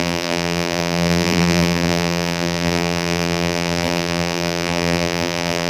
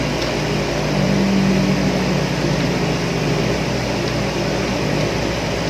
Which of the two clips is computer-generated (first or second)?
first